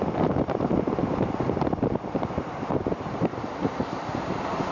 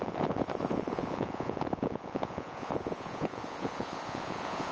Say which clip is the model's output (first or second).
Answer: second